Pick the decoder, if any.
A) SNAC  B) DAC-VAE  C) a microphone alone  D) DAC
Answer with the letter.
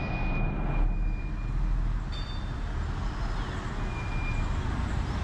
C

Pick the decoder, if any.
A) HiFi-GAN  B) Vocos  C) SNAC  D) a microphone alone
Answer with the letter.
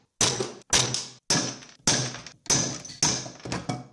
D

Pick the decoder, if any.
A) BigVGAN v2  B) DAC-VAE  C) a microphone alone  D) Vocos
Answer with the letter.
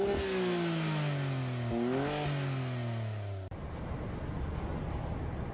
C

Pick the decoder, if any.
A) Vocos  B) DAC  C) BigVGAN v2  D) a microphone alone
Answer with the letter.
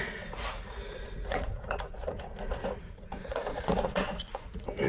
A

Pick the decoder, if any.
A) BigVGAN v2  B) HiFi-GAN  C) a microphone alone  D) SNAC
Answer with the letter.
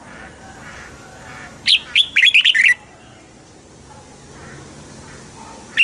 C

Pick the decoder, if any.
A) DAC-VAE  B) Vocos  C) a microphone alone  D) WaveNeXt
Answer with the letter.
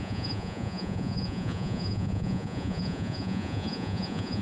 B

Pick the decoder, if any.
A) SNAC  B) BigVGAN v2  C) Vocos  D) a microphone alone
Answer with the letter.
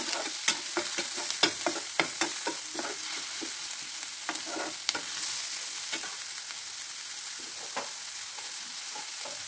D